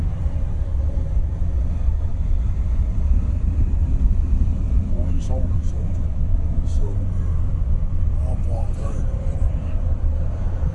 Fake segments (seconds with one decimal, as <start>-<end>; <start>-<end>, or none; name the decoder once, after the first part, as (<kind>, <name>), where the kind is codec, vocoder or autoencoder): 2.1-4.8 (vocoder, BigVGAN v2); 7.5-9.5